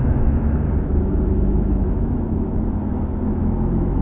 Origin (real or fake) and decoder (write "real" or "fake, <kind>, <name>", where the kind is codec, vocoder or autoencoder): fake, autoencoder, DAC-VAE